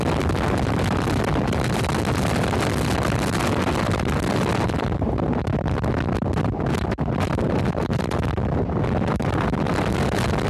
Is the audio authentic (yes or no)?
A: yes